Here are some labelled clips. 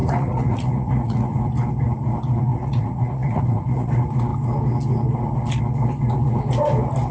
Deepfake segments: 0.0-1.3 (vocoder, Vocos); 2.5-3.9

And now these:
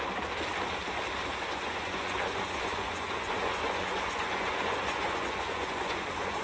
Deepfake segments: 1.4-6.4 (vocoder, Vocos)

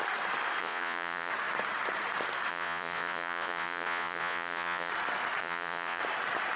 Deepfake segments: 0.6-1.3 (vocoder, Vocos); 2.5-4.9; 5.4-6.0